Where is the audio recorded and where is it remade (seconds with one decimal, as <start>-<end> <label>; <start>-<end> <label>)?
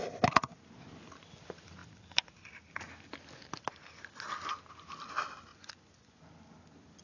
0.0-5.5 recorded; 5.5-6.2 remade; 6.2-7.0 recorded